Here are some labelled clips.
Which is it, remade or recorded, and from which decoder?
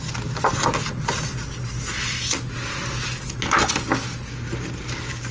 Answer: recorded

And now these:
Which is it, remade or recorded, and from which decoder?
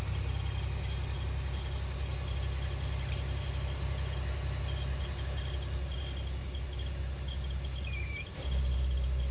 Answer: recorded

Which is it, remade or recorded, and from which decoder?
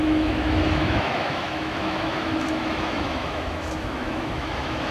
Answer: remade, autoencoder, DAC-VAE